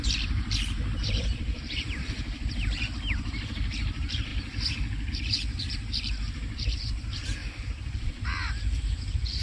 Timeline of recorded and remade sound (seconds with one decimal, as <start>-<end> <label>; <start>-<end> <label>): 0.0-4.3 remade; 4.3-5.1 recorded; 5.1-9.4 remade